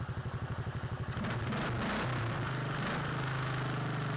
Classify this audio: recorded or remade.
recorded